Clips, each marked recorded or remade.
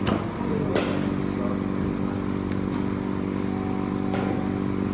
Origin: recorded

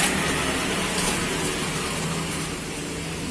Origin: recorded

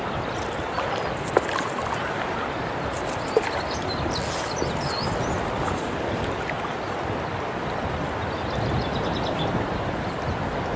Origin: recorded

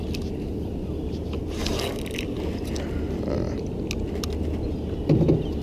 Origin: recorded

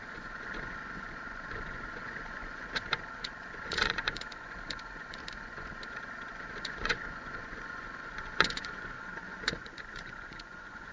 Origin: remade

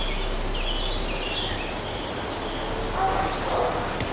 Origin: recorded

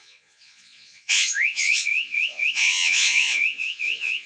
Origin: remade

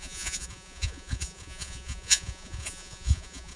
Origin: remade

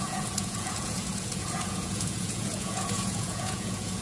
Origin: remade